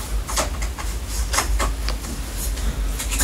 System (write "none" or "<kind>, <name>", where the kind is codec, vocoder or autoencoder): none